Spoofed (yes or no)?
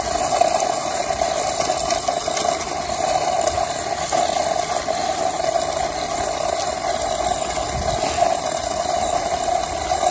no